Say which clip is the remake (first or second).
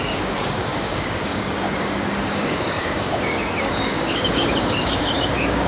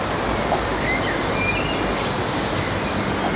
first